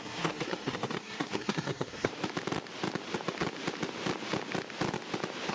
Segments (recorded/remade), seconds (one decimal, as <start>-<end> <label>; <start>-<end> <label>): 0.0-2.1 remade; 2.1-5.5 recorded